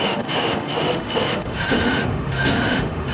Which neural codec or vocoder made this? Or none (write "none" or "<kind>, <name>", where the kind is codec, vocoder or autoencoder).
autoencoder, DAC-VAE